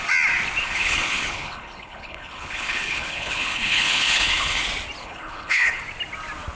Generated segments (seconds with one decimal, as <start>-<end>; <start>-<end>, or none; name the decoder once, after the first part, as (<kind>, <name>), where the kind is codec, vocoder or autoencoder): 0.6-4.6 (codec, HILCodec); 5.0-5.8